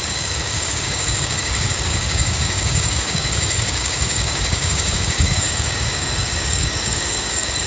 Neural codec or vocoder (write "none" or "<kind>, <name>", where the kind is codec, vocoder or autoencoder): codec, DAC